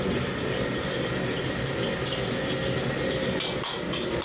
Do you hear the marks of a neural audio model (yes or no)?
no